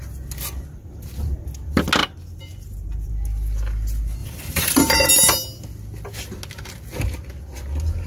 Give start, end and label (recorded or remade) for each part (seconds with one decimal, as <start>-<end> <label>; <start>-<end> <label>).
0.0-2.0 recorded; 2.0-3.1 remade; 3.1-4.2 recorded; 4.2-5.1 remade; 5.1-8.1 recorded